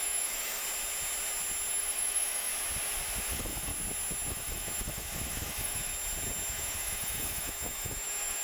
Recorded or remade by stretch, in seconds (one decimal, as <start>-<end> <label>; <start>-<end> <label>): 0.0-0.6 remade; 0.6-1.7 recorded; 1.7-2.5 remade; 2.5-3.3 recorded; 3.3-3.7 remade; 3.7-4.3 recorded; 4.3-5.9 remade; 5.9-6.5 recorded; 6.5-8.4 remade